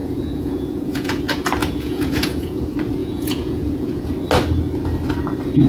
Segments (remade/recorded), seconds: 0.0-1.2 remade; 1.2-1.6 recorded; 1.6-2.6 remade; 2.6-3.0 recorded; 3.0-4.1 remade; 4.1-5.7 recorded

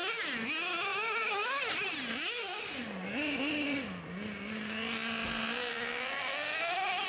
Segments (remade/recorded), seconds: 0.0-7.1 recorded

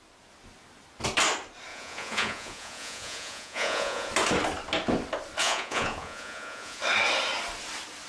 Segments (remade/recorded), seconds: 0.0-1.7 recorded; 1.7-4.1 remade; 4.1-5.4 recorded; 5.4-6.8 remade; 6.8-8.1 recorded

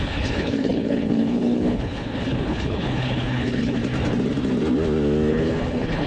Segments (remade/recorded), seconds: 0.0-3.8 remade; 3.8-5.3 recorded; 5.3-6.1 remade

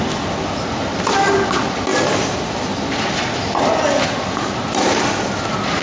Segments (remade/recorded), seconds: 0.0-5.8 recorded

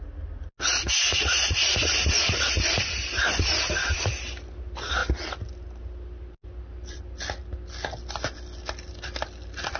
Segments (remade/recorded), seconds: 0.0-1.1 recorded; 1.1-2.8 remade; 2.8-9.8 recorded